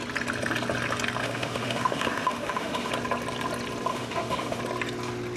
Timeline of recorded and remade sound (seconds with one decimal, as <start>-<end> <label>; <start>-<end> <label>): 0.0-1.2 recorded; 1.2-2.9 remade; 2.9-3.9 recorded; 3.9-4.6 remade; 4.6-5.4 recorded